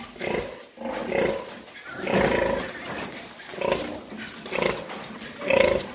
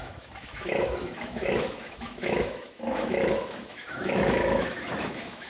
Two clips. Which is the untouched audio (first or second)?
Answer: first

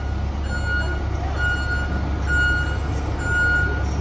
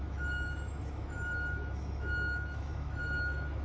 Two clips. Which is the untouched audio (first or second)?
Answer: first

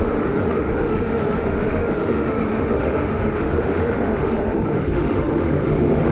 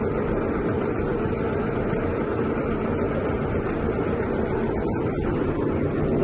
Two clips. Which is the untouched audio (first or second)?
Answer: second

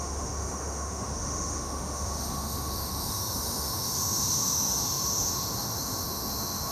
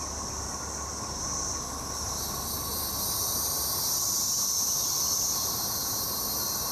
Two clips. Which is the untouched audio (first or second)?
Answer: second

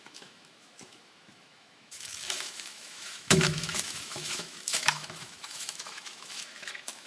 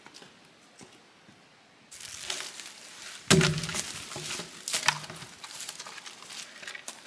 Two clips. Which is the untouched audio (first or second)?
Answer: second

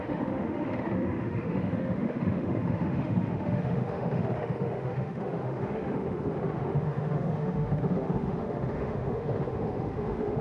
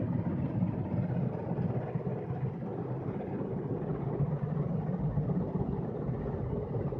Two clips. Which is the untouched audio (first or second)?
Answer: second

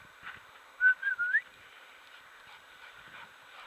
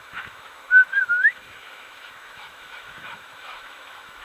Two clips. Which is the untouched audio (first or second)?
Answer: first